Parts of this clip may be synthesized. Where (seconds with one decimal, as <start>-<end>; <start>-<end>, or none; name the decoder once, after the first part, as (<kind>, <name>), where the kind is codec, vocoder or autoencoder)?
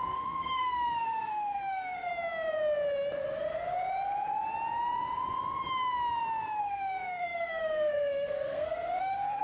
0.0-2.1 (codec, SNAC); 6.6-9.4